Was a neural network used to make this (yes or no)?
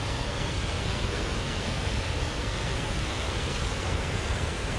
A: yes